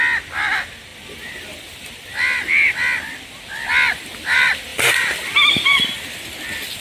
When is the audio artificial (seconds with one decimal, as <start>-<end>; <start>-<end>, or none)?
0.9-3.4; 4.7-6.0